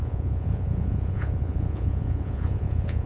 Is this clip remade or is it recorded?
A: remade